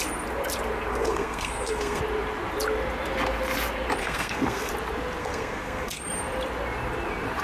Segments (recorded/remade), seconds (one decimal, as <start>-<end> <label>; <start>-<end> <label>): 0.0-0.9 recorded; 0.9-2.0 remade; 2.0-4.0 recorded; 4.0-4.7 remade; 4.7-5.2 recorded; 5.2-6.0 remade; 6.0-7.4 recorded